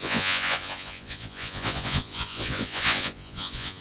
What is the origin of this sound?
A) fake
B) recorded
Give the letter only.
A